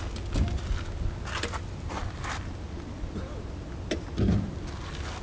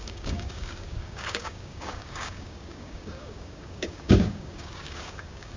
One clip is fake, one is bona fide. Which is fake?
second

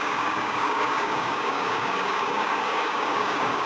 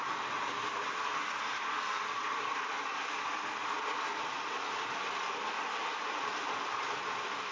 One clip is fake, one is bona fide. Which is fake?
first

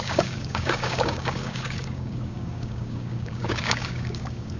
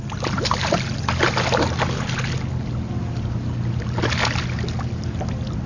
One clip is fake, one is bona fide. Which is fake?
first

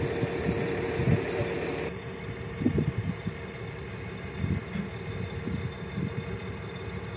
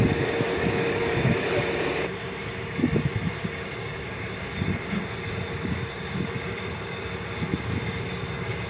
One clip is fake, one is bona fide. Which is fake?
second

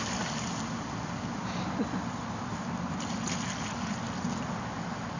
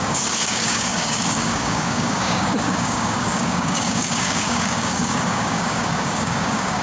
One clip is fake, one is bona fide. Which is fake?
second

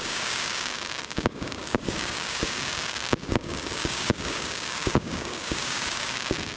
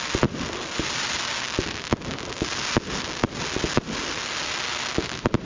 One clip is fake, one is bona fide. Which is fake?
first